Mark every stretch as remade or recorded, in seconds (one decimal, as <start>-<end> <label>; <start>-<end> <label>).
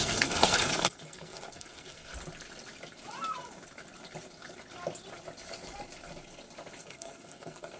0.0-2.1 remade; 2.1-6.8 recorded; 6.8-7.8 remade